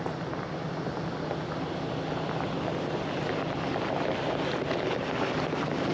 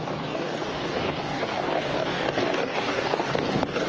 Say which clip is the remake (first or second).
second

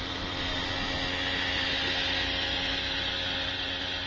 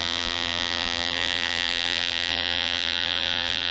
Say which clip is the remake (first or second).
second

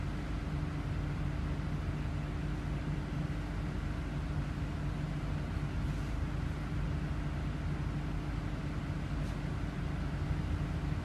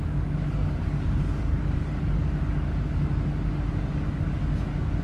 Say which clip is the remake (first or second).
second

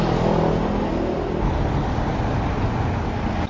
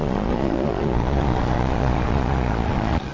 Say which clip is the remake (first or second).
second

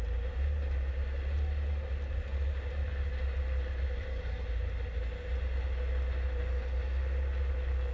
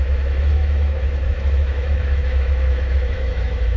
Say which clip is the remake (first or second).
second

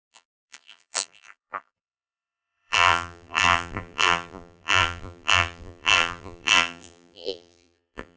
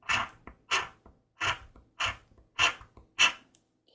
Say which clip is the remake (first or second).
first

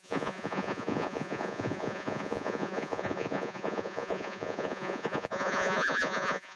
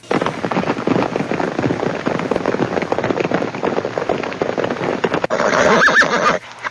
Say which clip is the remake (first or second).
first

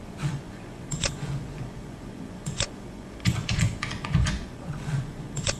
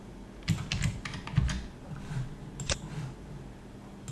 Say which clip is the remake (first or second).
first